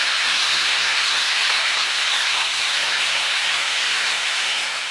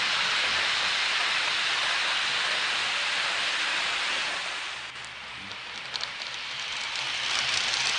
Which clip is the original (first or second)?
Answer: second